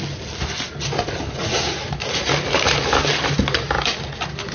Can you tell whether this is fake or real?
real